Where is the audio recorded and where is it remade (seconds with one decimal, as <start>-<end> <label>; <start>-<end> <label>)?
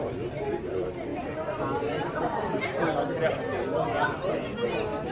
0.0-5.1 recorded